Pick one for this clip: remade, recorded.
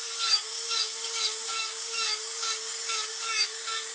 remade